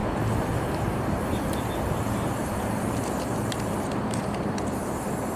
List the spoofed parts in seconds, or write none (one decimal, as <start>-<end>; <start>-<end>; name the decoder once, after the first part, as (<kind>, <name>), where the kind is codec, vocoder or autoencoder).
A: 2.4-5.4 (vocoder, BigVGAN v2)